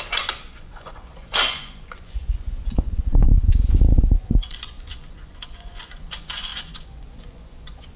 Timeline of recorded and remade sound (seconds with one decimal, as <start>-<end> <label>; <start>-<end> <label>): 0.0-8.0 remade